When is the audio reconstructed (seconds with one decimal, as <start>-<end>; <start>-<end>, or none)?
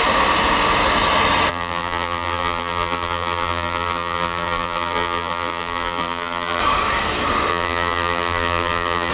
1.5-6.6; 7.5-9.1